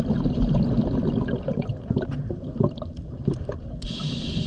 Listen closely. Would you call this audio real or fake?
real